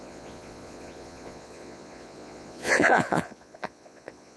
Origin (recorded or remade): remade